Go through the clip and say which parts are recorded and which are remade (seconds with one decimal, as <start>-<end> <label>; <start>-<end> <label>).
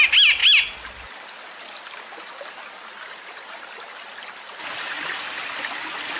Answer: 0.0-6.2 recorded